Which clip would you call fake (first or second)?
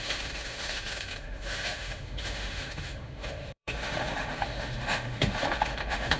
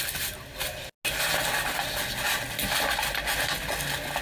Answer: first